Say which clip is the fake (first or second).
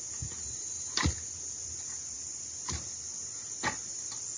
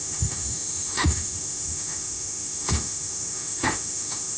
second